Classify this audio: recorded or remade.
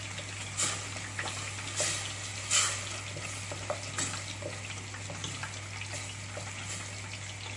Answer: recorded